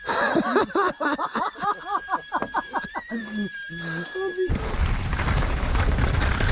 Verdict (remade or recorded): remade